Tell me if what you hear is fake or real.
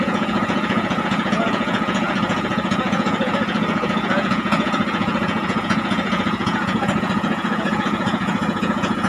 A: fake